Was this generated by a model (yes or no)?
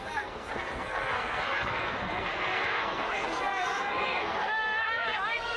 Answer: yes